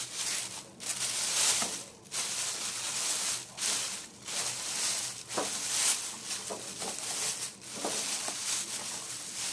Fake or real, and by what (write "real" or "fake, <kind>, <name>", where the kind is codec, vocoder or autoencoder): real